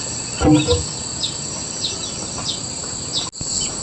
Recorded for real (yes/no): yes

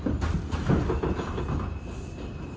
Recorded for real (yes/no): yes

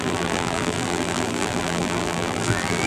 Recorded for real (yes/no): no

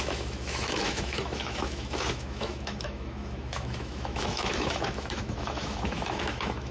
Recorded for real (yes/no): no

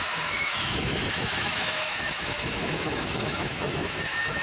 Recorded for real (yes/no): no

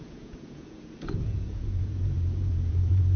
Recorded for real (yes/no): no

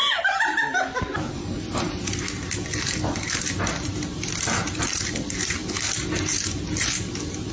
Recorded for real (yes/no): yes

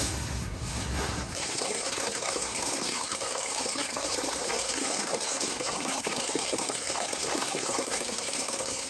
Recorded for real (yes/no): no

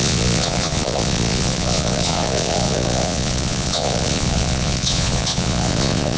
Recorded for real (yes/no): no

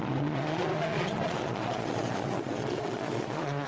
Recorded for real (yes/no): no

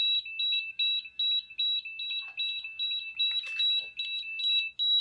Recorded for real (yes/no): yes